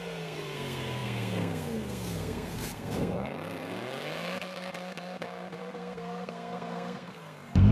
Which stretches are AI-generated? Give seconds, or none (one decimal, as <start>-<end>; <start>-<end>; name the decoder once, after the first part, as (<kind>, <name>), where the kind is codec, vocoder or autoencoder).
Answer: 0.0-7.7 (codec, SNAC)